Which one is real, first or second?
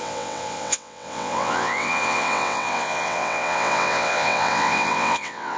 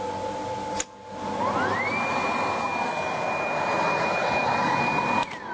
second